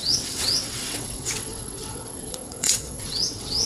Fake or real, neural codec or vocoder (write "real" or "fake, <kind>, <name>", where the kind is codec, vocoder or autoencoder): fake, vocoder, WaveNeXt